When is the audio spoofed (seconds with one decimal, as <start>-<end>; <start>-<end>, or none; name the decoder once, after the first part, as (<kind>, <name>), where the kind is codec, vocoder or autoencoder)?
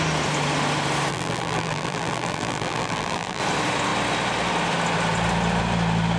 1.1-3.4 (vocoder, BigVGAN v2)